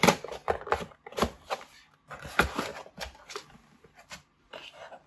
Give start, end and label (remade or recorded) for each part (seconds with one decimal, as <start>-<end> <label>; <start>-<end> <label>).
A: 0.0-2.7 recorded; 2.7-3.4 remade; 3.4-5.1 recorded